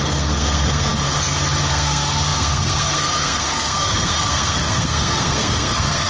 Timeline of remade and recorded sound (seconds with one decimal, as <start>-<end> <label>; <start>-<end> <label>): 0.0-0.9 remade; 0.9-1.7 recorded; 1.7-6.1 remade